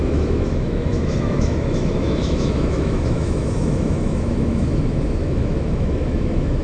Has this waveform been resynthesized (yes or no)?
yes